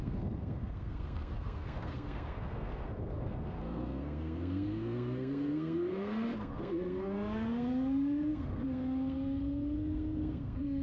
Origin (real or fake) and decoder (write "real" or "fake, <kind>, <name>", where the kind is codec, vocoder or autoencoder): fake, codec, SNAC